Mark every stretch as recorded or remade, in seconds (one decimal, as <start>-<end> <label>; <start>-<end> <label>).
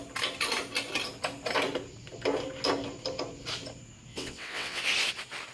0.0-4.1 recorded; 4.1-4.8 remade; 4.8-5.5 recorded